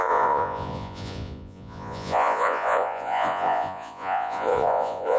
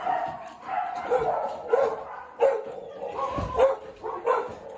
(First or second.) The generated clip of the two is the first